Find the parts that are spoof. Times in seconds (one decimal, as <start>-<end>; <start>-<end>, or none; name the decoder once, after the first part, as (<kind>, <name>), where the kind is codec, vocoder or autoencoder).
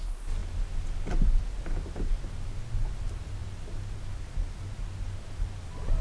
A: none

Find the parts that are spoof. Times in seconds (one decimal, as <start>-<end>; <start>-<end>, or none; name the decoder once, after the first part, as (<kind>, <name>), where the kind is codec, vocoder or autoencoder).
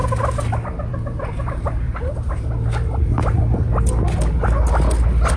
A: 0.9-2.5 (vocoder, BigVGAN v2)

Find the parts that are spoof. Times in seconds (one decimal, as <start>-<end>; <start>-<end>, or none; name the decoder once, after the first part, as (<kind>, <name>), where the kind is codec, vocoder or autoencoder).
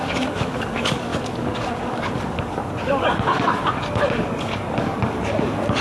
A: 0.0-5.8 (codec, DAC)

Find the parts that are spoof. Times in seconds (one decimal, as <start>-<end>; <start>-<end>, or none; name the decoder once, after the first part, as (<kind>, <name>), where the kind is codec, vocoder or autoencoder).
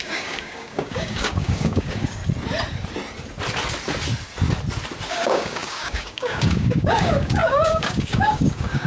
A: 0.0-2.2 (codec, DAC); 5.1-8.9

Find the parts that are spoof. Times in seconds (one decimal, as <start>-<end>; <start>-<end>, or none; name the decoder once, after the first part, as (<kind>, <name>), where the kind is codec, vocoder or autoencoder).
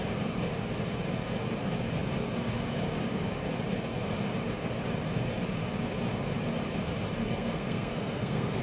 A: 7.2-8.6 (codec, SNAC)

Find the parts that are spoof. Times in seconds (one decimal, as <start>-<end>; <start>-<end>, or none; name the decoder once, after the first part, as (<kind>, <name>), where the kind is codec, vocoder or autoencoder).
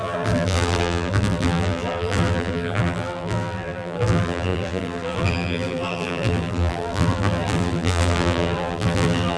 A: 0.0-9.4 (vocoder, BigVGAN v2)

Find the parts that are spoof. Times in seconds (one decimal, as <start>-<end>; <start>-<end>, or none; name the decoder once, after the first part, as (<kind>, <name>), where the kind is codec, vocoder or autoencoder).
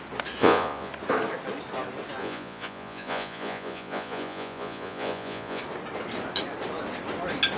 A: 0.4-0.9 (vocoder, Vocos); 2.2-5.6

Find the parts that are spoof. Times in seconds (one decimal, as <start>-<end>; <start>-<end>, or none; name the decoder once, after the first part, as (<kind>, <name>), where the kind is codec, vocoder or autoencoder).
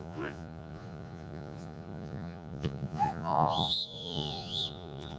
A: 0.0-5.2 (vocoder, Vocos)